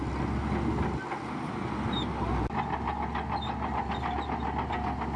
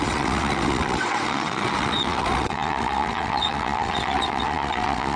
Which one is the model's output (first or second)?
second